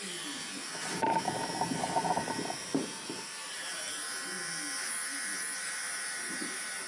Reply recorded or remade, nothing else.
remade